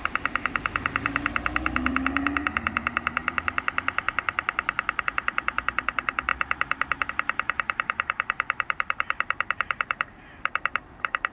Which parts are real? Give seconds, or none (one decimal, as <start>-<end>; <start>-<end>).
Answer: 3.2-5.0